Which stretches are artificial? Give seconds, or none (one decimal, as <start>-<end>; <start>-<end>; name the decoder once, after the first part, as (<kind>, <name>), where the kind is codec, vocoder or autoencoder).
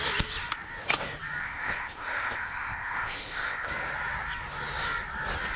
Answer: 1.4-3.7 (codec, ZipCodec)